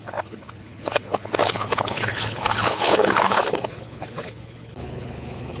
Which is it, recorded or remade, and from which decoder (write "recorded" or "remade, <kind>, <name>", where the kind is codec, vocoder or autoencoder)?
remade, codec, HILCodec